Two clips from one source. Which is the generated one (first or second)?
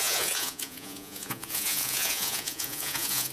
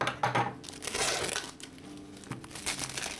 first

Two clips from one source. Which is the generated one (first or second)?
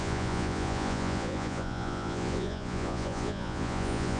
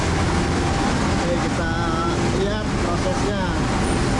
first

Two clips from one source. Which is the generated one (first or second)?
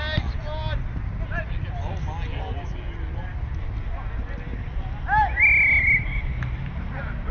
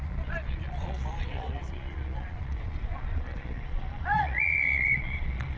second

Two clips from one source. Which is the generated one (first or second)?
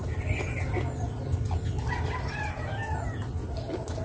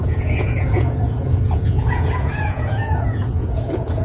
second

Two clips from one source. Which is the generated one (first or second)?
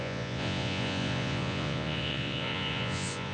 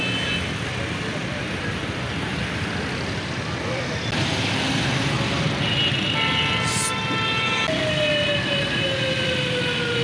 first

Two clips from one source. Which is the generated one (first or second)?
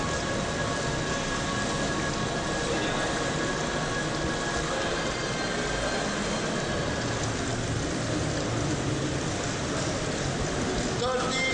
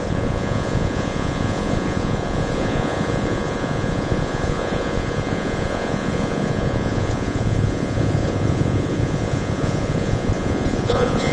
second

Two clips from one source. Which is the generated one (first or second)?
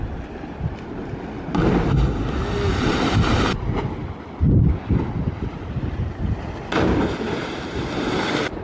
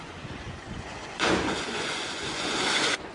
second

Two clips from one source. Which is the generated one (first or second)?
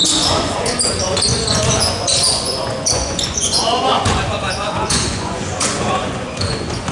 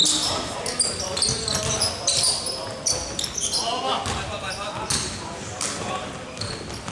first